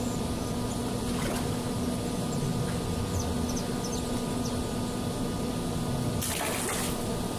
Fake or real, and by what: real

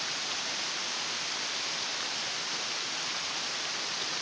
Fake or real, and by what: real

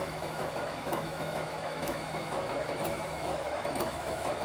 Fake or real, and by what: fake, autoencoder, DAC-VAE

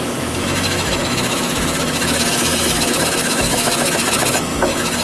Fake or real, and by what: fake, autoencoder, DAC-VAE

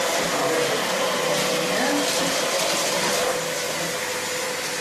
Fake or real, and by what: real